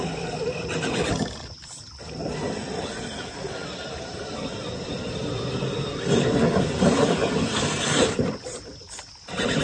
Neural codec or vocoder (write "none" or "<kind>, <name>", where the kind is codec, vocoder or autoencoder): none